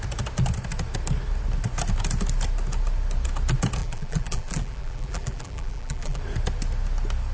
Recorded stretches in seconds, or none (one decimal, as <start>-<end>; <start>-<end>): 0.0-3.8; 6.2-7.3